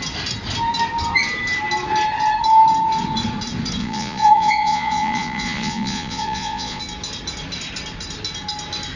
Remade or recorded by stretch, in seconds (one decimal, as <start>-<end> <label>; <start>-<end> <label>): 0.0-3.8 recorded; 3.8-6.8 remade; 6.8-9.0 recorded